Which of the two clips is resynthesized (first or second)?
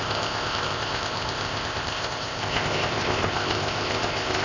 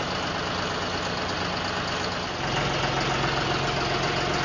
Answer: first